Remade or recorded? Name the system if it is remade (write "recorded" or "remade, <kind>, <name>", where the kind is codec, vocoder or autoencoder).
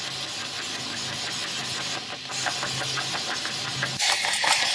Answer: recorded